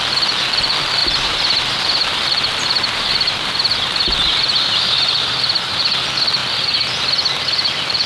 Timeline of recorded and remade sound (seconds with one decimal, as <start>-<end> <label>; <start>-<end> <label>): 0.0-1.0 recorded; 1.0-5.8 remade; 5.8-8.1 recorded